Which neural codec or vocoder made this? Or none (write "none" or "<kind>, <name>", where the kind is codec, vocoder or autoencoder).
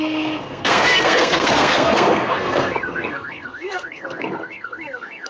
codec, SNAC